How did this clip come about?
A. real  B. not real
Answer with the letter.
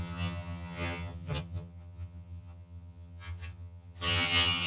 B